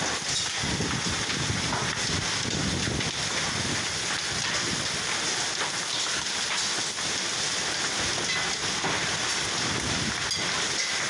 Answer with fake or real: real